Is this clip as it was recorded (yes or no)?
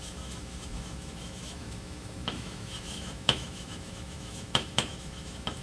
no